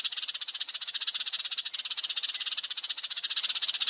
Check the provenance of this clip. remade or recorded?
recorded